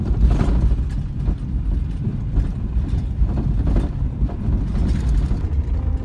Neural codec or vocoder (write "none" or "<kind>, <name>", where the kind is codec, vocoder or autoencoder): none